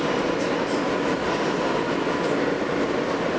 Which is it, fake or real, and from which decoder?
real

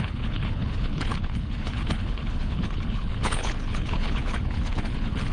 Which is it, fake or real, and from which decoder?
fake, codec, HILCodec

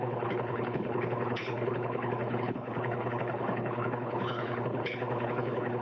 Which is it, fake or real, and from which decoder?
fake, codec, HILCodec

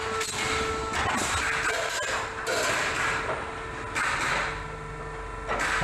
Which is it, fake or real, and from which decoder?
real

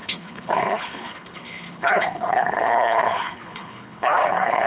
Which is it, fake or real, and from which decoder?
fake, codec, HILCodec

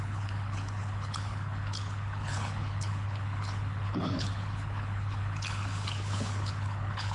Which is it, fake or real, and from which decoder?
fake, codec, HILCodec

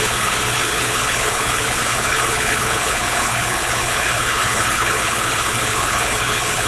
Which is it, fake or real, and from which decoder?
fake, codec, HILCodec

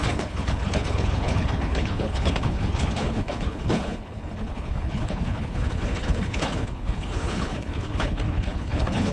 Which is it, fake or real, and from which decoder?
fake, codec, HILCodec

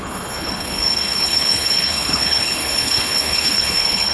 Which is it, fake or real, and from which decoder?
fake, codec, HILCodec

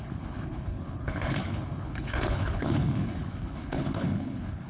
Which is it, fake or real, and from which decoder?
fake, codec, HILCodec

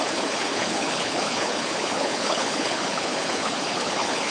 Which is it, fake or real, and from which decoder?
fake, codec, HILCodec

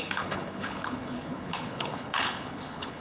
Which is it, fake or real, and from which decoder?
fake, codec, HILCodec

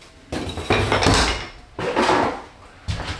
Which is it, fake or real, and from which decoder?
real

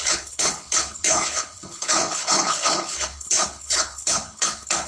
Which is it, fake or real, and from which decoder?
fake, codec, HILCodec